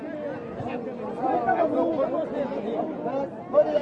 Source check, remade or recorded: recorded